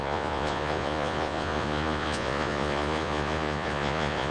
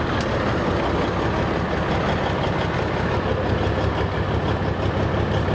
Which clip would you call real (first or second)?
second